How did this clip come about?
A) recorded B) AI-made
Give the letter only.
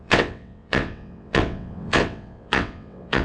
B